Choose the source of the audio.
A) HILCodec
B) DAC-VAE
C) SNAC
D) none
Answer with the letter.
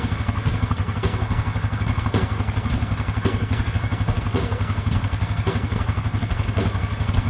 C